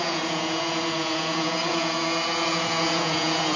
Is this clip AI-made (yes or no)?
yes